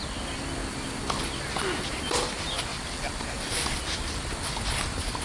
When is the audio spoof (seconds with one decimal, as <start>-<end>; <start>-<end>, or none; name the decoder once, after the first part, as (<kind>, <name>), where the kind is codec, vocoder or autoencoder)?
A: 2.7-4.3 (vocoder, BigVGAN v2)